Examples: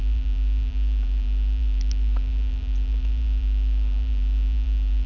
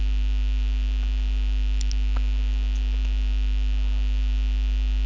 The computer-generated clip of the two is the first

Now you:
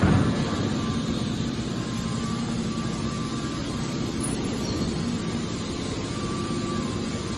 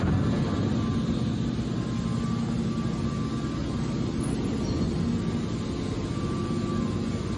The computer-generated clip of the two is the first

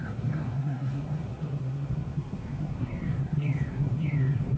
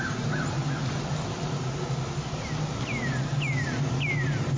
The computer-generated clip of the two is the first